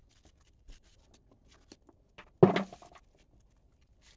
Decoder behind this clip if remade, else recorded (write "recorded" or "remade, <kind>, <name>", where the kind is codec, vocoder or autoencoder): recorded